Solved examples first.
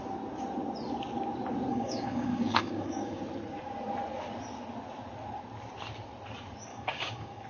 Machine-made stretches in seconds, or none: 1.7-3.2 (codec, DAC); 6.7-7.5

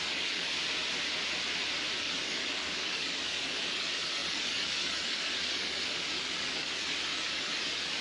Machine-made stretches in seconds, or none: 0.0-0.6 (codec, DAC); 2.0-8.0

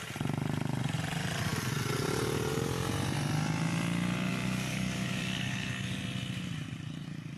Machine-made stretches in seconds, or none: 4.3-6.0 (codec, DAC)

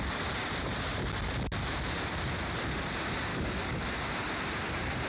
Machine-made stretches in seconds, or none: 3.3-3.8 (codec, DAC)

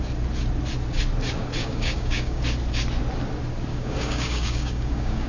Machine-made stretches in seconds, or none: 1.6-2.5 (codec, DAC); 3.7-5.3

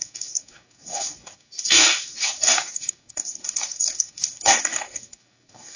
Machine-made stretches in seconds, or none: 0.0-5.8 (codec, DAC)